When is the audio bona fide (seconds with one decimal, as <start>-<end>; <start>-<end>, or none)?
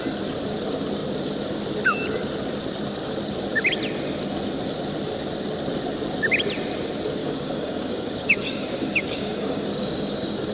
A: 0.0-7.2